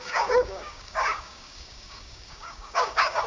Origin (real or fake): fake